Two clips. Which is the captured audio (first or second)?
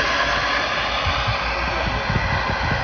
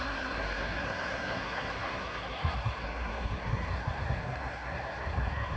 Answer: first